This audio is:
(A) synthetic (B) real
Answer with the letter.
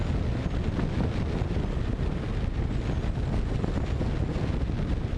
B